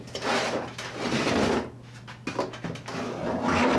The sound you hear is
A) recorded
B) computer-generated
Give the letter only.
A